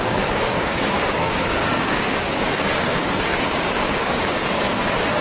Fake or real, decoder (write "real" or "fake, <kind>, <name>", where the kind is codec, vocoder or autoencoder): fake, codec, DAC